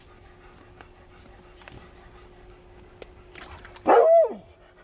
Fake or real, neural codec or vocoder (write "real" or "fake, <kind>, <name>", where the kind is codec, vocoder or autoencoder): real